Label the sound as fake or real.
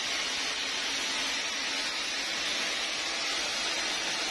real